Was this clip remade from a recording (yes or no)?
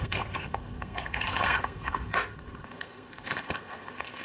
yes